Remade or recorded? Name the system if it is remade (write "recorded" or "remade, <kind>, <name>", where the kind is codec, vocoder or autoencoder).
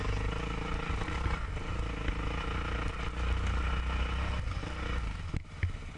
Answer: recorded